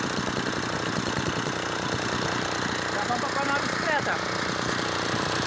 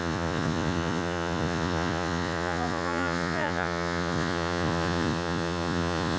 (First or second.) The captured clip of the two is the first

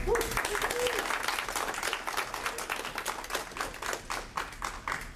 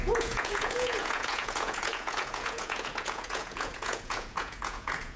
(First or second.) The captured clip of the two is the first